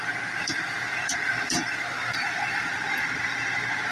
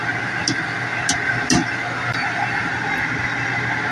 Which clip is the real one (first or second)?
second